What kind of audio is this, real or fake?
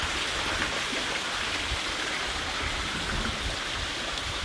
real